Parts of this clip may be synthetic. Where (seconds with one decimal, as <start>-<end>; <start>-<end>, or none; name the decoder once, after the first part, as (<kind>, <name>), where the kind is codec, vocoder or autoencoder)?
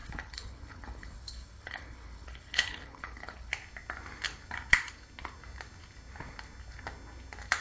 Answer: 0.0-3.5 (codec, HILCodec)